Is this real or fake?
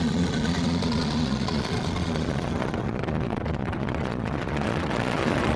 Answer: fake